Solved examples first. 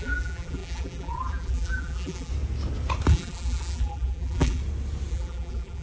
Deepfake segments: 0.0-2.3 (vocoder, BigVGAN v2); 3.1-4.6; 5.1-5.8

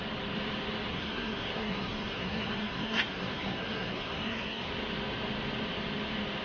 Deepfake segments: 0.9-4.7 (codec, SNAC)

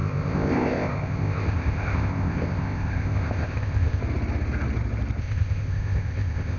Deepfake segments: 0.0-4.0 (codec, ZipCodec); 5.2-6.6

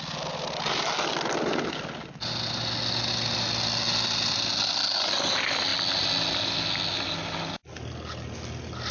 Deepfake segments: none

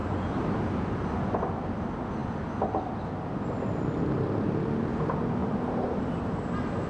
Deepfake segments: 0.0-0.6 (vocoder, BigVGAN v2); 5.4-6.1

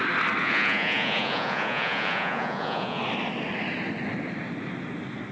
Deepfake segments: 0.4-3.0 (vocoder, Vocos)